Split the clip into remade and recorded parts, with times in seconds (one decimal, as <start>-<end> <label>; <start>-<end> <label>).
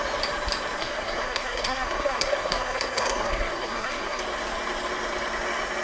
0.0-0.8 recorded; 0.8-4.2 remade; 4.2-5.8 recorded